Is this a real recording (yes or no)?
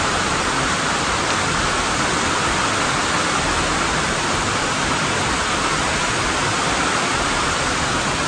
no